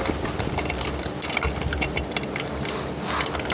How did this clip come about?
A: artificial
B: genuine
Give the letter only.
B